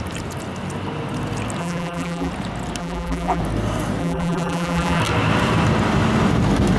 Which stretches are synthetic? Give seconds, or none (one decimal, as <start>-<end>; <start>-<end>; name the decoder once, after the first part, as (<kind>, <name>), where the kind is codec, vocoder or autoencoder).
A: 1.6-2.3 (vocoder, BigVGAN v2); 2.8-3.4; 4.0-5.0